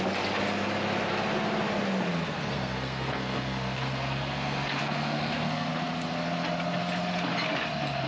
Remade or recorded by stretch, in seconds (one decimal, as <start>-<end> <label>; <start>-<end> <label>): 0.0-2.3 recorded; 2.3-5.7 remade; 5.7-8.1 recorded